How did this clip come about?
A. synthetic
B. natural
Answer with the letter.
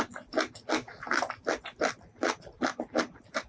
B